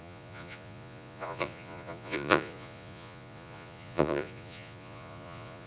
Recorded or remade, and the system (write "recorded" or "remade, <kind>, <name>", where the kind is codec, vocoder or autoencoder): remade, vocoder, Vocos